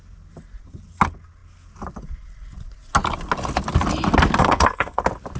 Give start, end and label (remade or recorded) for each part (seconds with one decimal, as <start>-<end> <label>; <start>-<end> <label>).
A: 0.0-4.4 recorded; 4.4-5.0 remade; 5.0-5.4 recorded